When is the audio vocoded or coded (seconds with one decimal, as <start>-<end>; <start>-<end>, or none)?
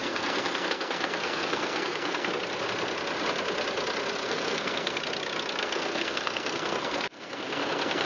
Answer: 0.0-2.3; 4.2-5.0; 5.6-8.1